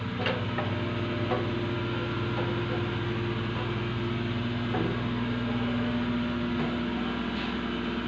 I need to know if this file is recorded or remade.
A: recorded